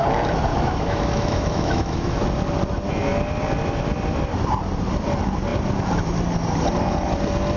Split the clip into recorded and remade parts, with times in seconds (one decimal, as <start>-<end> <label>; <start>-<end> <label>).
0.0-0.5 recorded; 0.5-2.2 remade; 2.2-7.6 recorded